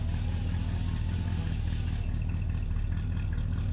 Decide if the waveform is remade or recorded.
recorded